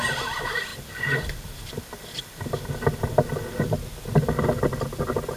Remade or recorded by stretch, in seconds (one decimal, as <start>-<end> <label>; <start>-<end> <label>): 0.0-5.4 recorded